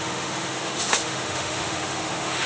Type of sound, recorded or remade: remade